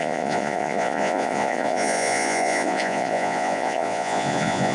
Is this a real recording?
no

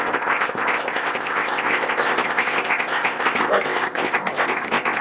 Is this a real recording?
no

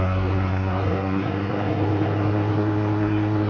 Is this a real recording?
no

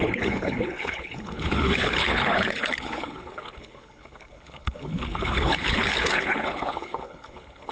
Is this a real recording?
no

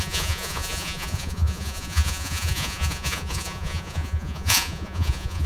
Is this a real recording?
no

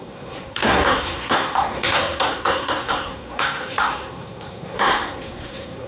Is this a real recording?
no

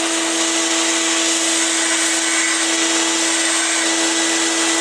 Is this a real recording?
yes